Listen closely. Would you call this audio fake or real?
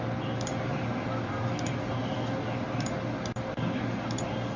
real